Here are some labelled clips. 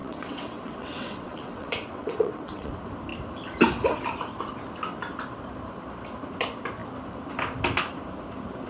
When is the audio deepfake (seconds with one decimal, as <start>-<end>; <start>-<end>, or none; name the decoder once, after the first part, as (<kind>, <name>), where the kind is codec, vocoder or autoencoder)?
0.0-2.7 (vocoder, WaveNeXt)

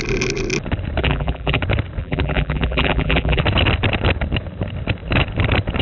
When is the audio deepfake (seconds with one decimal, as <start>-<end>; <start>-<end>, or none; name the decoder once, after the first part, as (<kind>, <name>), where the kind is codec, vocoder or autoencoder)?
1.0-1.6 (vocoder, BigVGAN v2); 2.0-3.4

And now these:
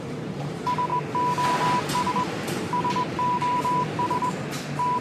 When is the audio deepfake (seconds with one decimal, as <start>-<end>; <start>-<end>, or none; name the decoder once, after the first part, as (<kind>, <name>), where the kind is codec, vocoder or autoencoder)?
0.0-0.9 (vocoder, BigVGAN v2); 2.1-5.0

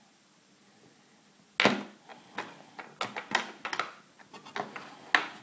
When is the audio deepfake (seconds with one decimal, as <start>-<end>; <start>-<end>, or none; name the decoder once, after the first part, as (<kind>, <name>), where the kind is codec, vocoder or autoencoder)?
none

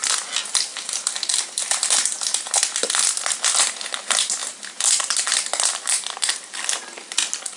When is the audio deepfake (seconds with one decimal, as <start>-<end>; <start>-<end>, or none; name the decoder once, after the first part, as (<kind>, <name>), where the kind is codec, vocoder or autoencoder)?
0.7-2.6 (vocoder, BigVGAN v2)

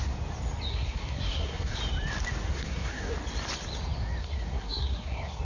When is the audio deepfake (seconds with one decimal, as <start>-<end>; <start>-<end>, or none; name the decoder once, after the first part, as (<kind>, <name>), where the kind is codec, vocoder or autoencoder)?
0.7-1.8 (codec, SNAC); 2.5-3.1; 4.2-5.4

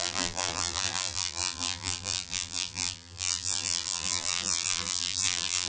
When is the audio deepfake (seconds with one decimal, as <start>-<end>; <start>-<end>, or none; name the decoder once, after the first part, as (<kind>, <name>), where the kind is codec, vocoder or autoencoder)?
0.0-5.7 (vocoder, BigVGAN v2)

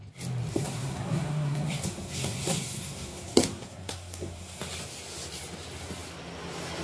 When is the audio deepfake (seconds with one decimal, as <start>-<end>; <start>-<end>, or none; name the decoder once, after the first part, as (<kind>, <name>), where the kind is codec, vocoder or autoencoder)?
0.5-4.6 (codec, SNAC)